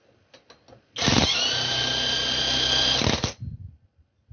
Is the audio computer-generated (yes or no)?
no